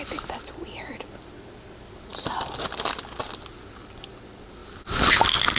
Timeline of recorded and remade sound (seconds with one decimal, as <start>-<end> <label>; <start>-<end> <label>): 0.0-5.6 recorded